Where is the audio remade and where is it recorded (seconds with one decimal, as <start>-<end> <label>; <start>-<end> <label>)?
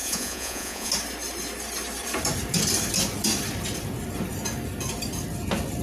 0.0-0.9 remade; 0.9-5.8 recorded